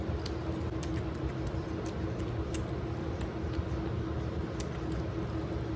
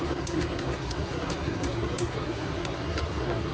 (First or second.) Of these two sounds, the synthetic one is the second